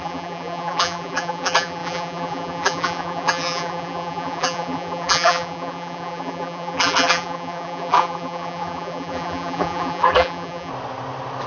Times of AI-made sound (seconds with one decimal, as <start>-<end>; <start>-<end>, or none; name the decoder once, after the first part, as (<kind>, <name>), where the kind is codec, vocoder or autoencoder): 0.0-10.7 (vocoder, BigVGAN v2)